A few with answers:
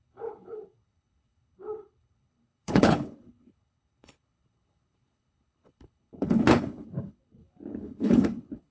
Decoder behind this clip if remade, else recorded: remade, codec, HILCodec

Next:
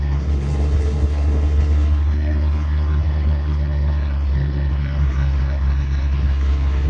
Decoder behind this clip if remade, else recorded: remade, codec, SNAC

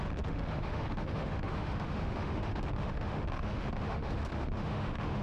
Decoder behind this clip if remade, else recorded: remade, autoencoder, DAC-VAE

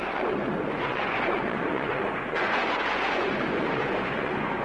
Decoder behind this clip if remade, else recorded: remade, vocoder, Vocos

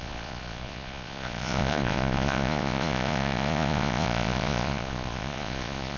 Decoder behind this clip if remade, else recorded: remade, vocoder, Vocos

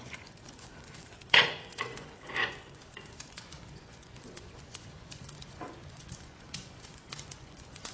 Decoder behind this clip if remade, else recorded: remade, vocoder, Vocos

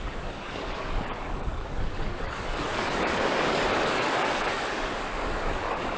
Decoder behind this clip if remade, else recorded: remade, codec, DAC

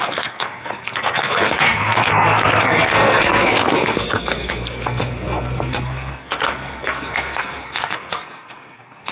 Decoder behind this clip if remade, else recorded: remade, codec, SNAC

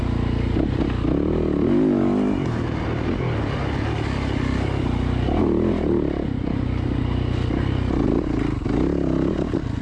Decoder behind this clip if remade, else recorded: recorded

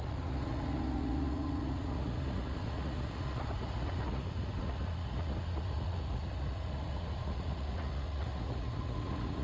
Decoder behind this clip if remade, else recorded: remade, vocoder, Vocos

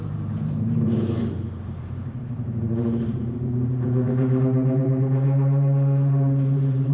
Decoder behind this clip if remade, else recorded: remade, vocoder, BigVGAN v2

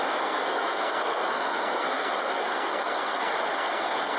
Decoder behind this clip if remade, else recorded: remade, codec, SNAC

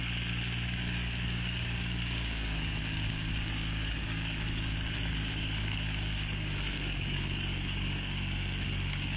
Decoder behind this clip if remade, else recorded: remade, codec, DAC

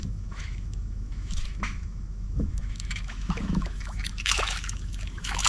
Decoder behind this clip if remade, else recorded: remade, autoencoder, DAC-VAE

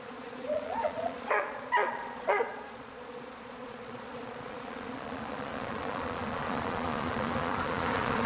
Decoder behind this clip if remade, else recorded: remade, vocoder, Vocos